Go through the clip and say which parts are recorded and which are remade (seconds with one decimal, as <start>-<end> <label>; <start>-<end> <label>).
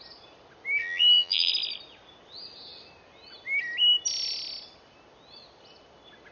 0.0-0.8 recorded; 0.8-1.5 remade; 1.5-6.3 recorded